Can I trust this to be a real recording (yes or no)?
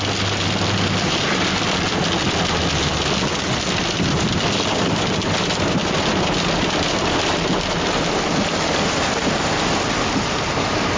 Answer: yes